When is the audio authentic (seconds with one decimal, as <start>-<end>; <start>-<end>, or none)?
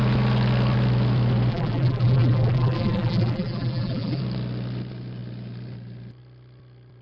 0.0-1.5; 4.2-7.0